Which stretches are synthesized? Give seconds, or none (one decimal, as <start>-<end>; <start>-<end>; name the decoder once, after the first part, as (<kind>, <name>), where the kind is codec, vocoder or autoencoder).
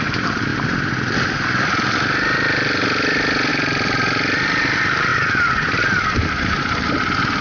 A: 0.0-0.5 (vocoder, BigVGAN v2); 3.5-5.1